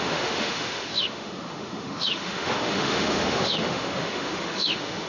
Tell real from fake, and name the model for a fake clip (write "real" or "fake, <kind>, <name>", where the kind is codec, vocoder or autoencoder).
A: fake, autoencoder, DAC-VAE